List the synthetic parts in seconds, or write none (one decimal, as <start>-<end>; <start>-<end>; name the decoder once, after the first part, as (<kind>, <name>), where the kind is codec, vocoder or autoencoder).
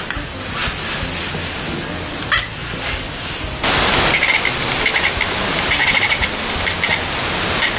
2.6-7.3 (vocoder, BigVGAN v2)